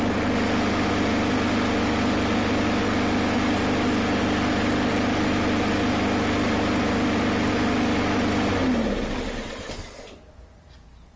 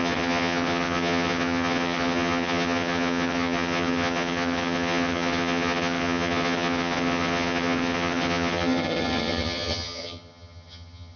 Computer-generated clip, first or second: second